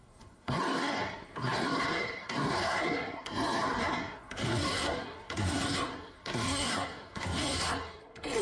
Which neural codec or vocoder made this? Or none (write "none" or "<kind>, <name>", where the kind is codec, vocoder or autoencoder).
codec, SNAC